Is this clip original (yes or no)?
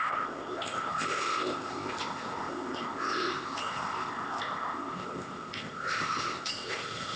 no